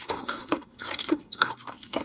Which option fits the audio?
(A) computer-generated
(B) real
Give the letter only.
A